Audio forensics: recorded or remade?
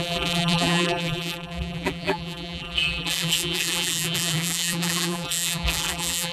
remade